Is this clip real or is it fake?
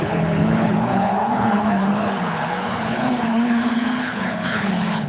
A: fake